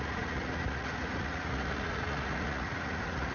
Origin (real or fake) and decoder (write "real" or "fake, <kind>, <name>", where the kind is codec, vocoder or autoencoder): fake, vocoder, Vocos